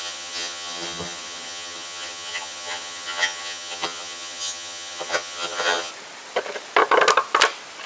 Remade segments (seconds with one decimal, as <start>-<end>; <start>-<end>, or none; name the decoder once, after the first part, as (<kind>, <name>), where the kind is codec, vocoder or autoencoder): 0.0-5.9 (vocoder, HiFi-GAN)